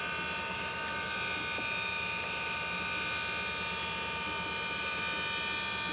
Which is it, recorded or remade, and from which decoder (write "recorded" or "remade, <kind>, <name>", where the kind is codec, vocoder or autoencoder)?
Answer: recorded